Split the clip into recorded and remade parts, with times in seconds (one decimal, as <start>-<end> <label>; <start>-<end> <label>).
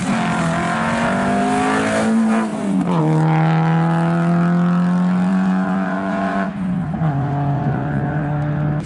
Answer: 0.0-2.5 recorded; 2.5-3.0 remade; 3.0-5.3 recorded; 5.3-8.2 remade; 8.2-8.9 recorded